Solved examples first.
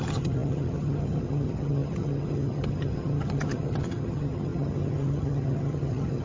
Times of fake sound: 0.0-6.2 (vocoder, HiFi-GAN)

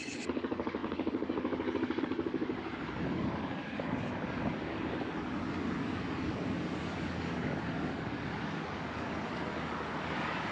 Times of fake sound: 0.0-10.5 (codec, DAC)

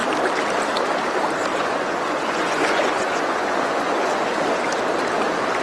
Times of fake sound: 1.5-4.4 (vocoder, Vocos)

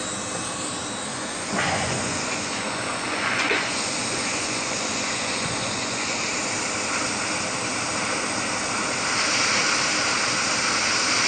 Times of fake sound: 1.1-6.3 (vocoder, Vocos)

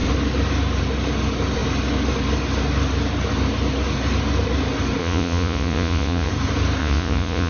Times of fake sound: 5.0-6.3 (vocoder, Vocos); 6.8-7.5

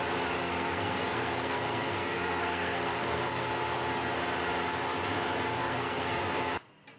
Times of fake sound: 0.4-3.5 (codec, SNAC); 5.6-6.2

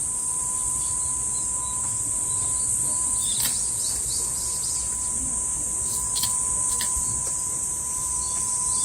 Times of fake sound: 0.0-1.1 (vocoder, BigVGAN v2); 1.8-3.5; 6.7-8.8